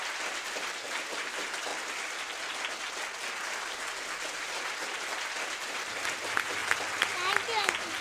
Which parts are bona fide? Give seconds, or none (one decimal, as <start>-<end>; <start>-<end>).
1.7-5.7; 6.6-8.0

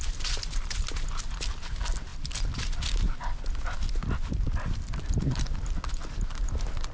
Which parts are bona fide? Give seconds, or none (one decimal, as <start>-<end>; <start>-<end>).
0.0-6.9